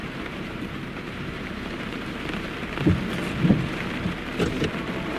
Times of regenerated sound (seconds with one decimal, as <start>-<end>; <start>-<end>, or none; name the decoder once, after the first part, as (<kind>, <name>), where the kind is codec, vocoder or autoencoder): 0.0-2.5 (vocoder, BigVGAN v2)